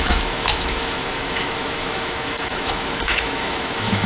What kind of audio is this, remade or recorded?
remade